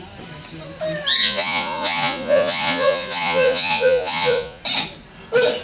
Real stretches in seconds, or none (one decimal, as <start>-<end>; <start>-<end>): 0.0-1.2; 4.6-5.6